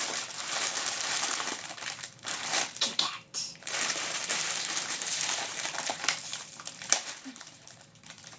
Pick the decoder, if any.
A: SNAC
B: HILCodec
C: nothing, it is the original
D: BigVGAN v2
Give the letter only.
D